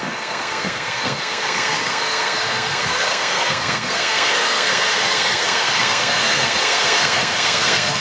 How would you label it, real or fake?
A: fake